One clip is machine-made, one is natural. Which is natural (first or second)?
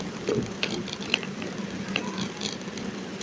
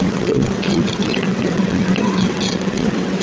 first